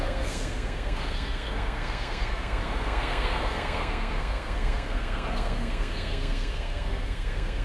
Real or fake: fake